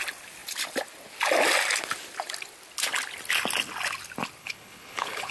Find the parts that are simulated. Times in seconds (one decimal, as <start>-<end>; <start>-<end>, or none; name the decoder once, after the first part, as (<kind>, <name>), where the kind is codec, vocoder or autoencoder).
4.4-5.3 (codec, HILCodec)